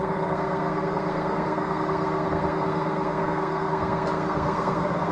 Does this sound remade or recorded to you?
remade